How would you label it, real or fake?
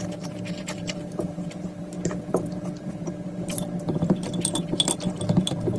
fake